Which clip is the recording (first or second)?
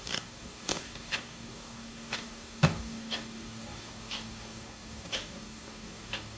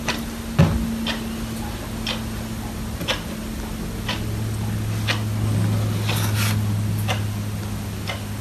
second